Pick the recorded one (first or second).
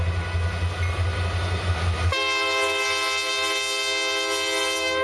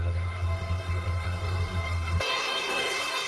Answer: first